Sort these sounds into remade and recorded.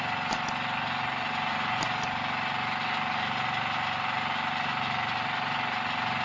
recorded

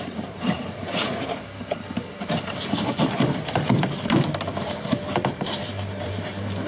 remade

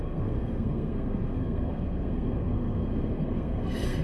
remade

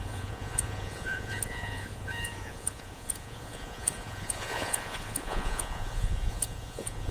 remade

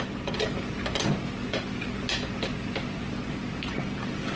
recorded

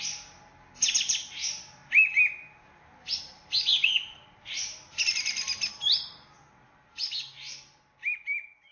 recorded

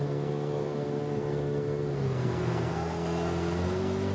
remade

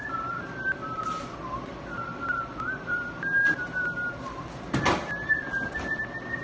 recorded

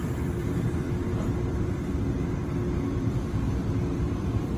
remade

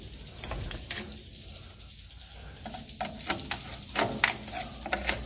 recorded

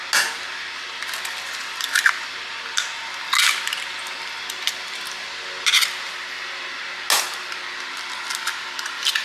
recorded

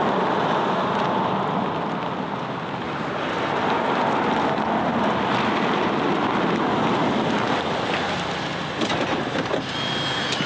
recorded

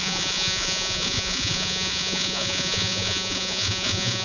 remade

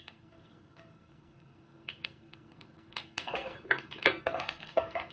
remade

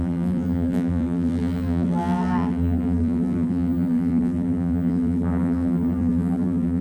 remade